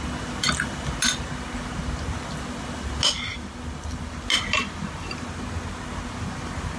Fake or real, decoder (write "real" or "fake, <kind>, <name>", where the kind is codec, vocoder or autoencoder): real